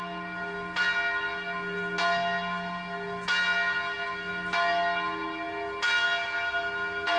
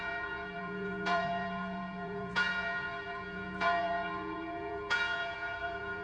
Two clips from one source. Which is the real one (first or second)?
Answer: first